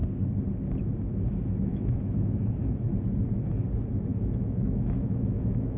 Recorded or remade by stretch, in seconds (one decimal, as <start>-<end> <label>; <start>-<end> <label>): 0.0-1.7 recorded; 1.7-2.9 remade; 2.9-4.1 recorded; 4.1-5.8 remade